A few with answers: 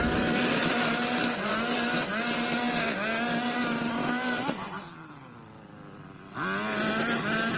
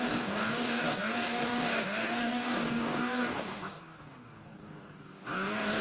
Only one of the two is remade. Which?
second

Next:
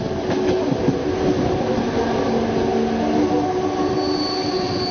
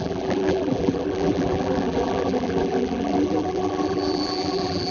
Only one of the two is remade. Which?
second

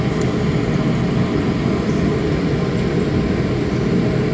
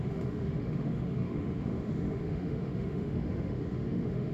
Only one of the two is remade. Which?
second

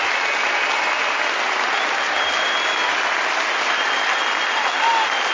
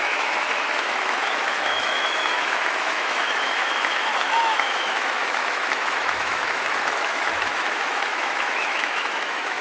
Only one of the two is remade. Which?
second